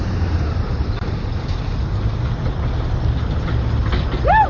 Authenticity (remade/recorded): recorded